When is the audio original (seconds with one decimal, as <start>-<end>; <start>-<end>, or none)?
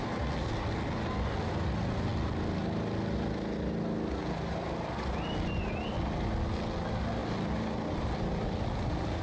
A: 0.0-9.2